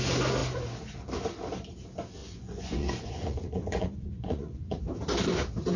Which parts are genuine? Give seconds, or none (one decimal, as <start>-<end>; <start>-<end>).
0.0-2.2; 4.8-5.8